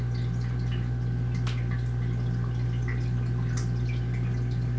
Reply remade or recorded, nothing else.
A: recorded